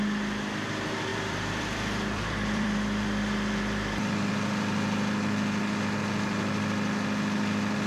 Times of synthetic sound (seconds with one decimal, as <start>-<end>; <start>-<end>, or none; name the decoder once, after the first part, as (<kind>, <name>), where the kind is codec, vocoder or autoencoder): 1.1-4.3 (vocoder, BigVGAN v2)